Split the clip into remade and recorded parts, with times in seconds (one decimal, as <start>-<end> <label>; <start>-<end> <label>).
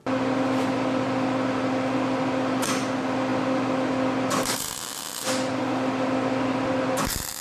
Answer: 0.0-7.4 recorded